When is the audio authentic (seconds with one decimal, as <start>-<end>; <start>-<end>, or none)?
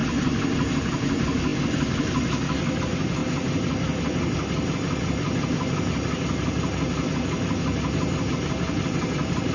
0.0-9.5